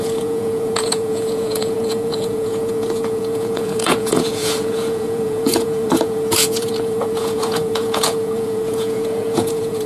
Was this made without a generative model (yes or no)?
no